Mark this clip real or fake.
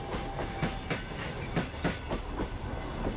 real